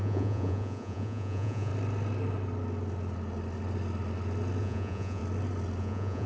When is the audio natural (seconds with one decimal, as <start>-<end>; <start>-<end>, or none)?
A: 1.7-4.6; 5.2-5.8